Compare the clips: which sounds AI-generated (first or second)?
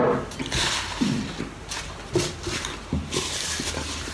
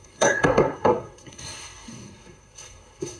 second